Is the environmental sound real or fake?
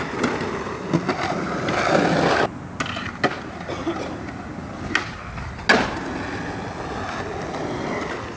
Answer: real